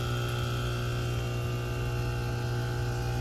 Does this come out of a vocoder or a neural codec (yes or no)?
no